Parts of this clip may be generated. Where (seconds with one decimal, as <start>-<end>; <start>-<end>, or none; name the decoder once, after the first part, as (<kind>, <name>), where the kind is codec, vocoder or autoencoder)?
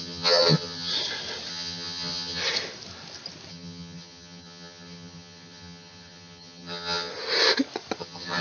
0.0-0.9 (vocoder, HiFi-GAN); 1.5-2.4; 3.5-7.1; 8.0-8.4